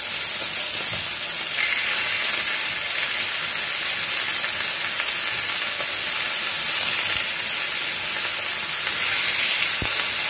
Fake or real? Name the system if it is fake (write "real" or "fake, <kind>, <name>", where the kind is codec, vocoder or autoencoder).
real